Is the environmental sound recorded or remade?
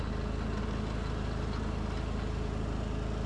recorded